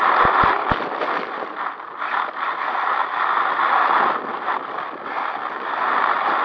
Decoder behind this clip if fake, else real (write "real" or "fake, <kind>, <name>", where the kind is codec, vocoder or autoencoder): real